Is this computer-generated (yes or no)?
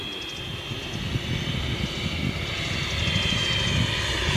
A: no